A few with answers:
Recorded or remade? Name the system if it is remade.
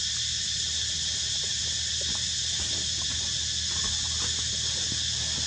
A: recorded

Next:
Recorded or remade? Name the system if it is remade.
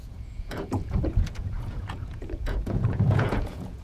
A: remade, vocoder, Vocos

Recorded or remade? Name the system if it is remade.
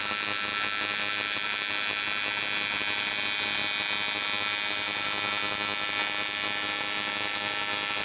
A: recorded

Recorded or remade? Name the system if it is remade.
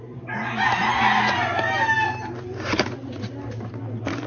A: recorded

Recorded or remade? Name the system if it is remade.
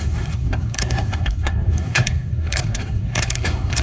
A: remade, codec, SNAC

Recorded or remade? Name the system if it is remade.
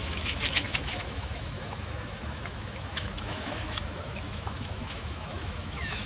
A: remade, autoencoder, DAC-VAE